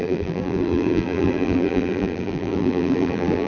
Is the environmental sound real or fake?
fake